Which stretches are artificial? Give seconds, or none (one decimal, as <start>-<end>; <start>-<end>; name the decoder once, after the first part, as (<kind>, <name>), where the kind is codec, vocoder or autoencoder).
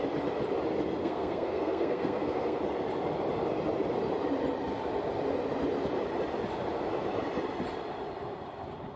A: 1.0-2.6 (codec, SNAC)